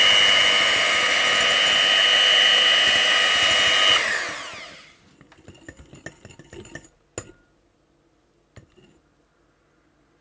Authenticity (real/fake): real